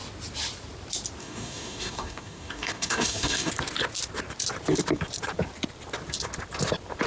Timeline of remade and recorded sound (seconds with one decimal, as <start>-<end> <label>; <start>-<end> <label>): 0.0-1.2 recorded; 1.2-3.5 remade; 3.5-7.1 recorded